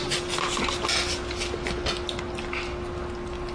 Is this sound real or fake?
real